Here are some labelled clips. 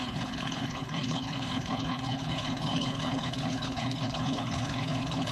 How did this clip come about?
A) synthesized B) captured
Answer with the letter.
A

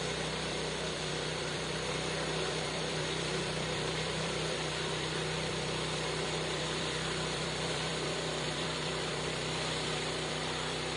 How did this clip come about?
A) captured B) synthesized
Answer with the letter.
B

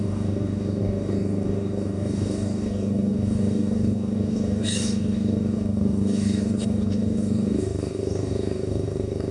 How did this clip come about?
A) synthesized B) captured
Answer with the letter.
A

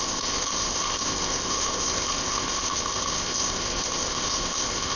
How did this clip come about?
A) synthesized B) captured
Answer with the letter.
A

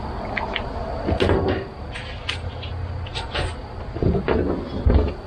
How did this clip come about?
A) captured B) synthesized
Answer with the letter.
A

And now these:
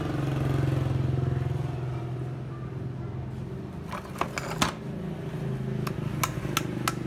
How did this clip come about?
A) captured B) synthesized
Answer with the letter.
A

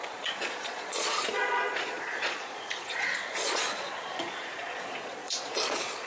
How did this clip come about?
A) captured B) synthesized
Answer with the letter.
B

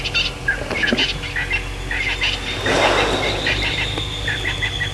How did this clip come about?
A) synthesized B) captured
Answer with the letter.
B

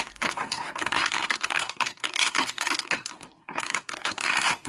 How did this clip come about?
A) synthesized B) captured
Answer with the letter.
A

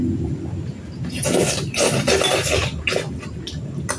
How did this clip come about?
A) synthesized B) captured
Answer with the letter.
B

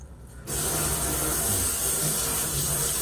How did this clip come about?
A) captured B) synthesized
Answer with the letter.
A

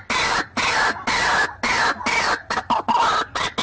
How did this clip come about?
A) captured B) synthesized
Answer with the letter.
A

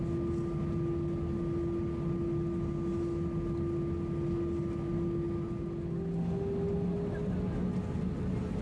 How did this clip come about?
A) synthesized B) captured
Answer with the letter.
B